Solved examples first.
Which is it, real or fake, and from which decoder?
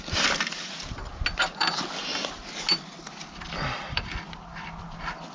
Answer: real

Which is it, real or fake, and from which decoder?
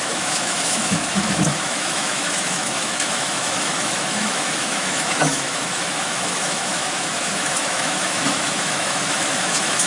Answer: fake, autoencoder, DAC-VAE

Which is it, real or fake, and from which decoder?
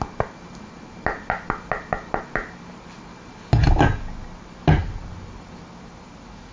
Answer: real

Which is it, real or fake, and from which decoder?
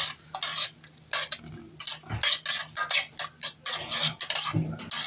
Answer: real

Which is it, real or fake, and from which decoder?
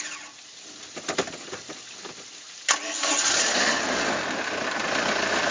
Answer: real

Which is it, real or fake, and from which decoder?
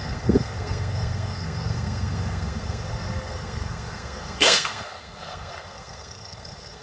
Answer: fake, codec, SNAC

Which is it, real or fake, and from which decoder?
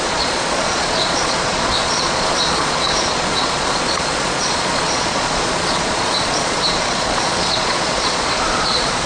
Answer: fake, vocoder, Vocos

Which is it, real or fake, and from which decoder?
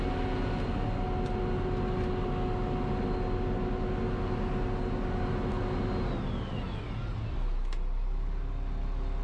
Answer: real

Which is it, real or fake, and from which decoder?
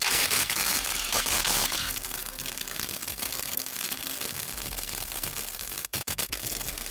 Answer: fake, codec, SNAC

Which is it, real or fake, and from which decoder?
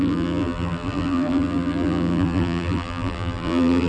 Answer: fake, vocoder, BigVGAN v2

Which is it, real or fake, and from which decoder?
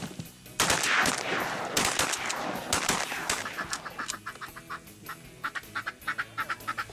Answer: real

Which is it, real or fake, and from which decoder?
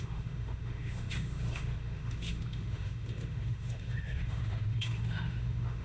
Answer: fake, autoencoder, DAC-VAE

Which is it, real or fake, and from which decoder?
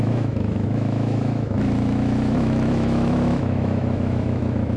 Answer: fake, autoencoder, DAC-VAE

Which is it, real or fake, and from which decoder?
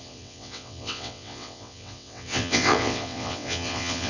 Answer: fake, vocoder, WaveNeXt